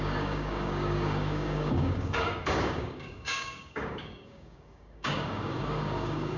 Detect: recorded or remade remade